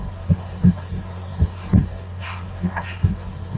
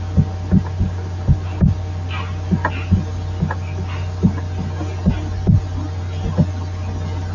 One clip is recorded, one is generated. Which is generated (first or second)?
first